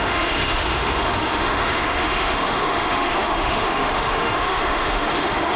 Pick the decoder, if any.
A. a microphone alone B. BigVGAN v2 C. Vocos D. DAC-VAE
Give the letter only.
D